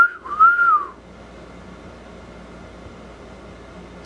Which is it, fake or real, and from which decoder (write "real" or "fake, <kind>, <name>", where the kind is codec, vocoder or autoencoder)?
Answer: real